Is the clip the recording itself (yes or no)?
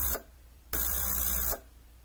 no